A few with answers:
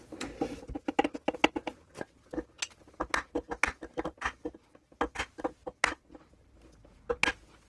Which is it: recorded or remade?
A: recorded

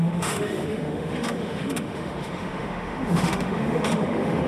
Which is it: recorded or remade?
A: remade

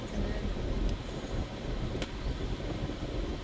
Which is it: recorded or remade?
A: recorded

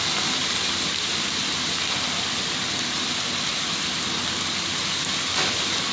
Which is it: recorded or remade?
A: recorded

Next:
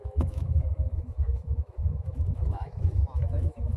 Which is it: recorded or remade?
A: remade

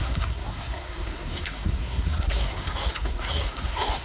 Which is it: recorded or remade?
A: remade